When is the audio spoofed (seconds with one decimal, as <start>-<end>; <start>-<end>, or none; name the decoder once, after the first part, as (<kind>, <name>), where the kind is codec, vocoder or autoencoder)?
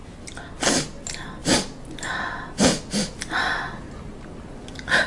none